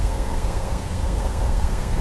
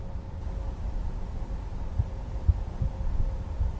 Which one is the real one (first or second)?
second